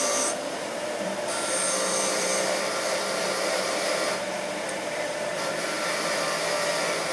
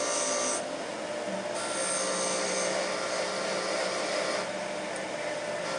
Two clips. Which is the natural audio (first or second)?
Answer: second